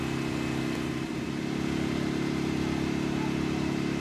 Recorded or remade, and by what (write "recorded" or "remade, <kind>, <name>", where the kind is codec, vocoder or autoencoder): recorded